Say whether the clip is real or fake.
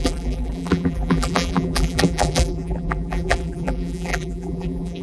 fake